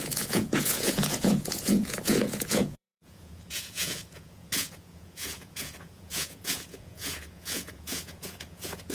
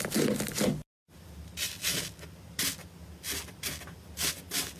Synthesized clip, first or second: first